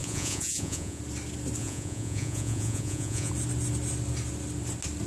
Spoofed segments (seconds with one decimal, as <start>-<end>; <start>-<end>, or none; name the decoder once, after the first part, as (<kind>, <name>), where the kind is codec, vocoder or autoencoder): 0.0-1.0 (vocoder, Vocos); 1.6-3.3

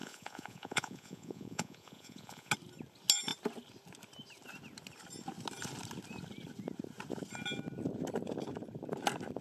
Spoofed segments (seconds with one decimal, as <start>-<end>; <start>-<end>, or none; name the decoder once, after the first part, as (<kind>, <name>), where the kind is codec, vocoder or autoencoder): 0.0-2.5 (vocoder, Vocos)

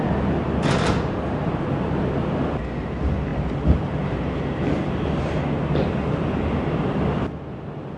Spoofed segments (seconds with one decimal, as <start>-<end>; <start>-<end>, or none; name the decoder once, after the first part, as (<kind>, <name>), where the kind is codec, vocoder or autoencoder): none